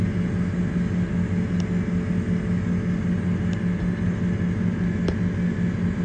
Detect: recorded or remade recorded